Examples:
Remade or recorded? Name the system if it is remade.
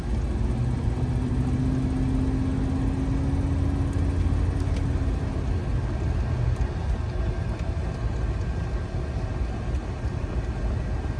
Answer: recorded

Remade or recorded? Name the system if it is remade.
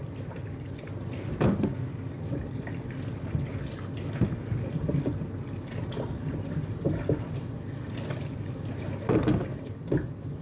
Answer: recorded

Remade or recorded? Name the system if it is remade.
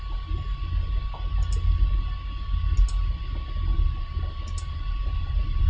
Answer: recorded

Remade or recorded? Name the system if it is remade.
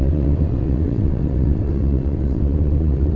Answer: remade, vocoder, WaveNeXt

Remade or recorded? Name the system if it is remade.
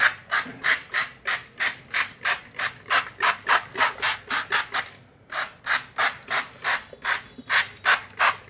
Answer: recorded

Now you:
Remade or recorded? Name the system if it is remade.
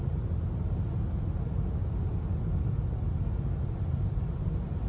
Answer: recorded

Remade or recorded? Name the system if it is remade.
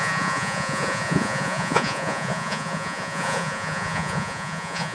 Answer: remade, vocoder, Vocos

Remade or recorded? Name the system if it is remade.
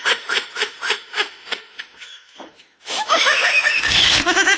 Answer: remade, autoencoder, DAC-VAE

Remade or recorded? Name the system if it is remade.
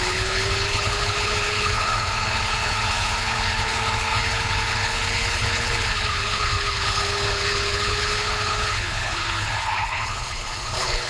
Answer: remade, codec, HILCodec